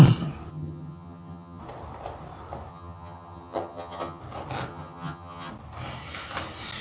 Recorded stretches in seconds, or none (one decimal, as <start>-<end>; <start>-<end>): 0.0-0.5; 1.6-2.7; 4.2-4.7; 5.5-6.8